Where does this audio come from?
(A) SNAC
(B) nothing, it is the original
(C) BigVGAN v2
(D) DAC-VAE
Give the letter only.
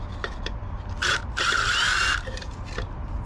C